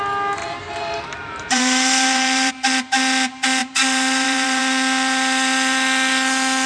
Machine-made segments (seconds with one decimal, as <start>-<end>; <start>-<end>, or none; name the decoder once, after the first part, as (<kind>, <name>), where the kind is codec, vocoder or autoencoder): 0.4-2.5 (vocoder, BigVGAN v2); 3.6-4.6